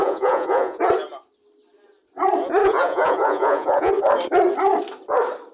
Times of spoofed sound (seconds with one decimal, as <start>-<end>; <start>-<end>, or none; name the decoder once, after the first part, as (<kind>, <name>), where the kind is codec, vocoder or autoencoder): 0.0-0.8 (vocoder, Vocos); 2.6-3.9